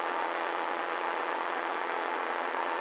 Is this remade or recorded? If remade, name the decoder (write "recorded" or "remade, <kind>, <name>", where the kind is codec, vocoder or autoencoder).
remade, vocoder, Vocos